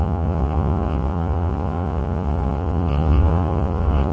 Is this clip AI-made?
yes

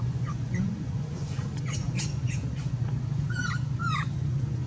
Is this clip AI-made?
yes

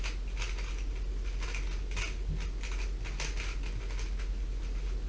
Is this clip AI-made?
no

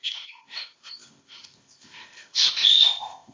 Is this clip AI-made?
yes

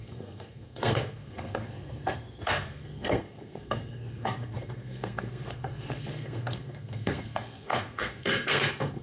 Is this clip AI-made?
yes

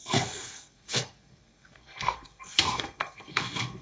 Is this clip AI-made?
yes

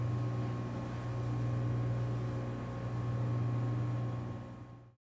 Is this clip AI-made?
no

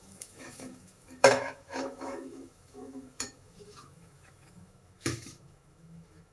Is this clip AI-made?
yes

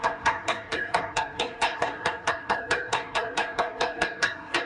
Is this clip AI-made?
yes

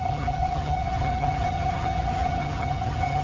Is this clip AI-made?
yes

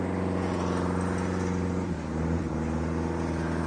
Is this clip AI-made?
no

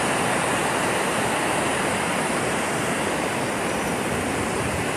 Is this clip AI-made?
no